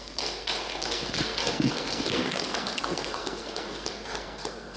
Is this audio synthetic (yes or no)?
yes